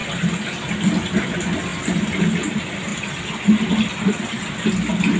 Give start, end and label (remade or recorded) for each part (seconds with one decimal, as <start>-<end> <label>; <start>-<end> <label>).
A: 0.0-5.2 recorded